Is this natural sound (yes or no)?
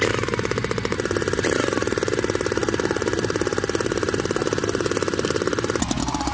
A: yes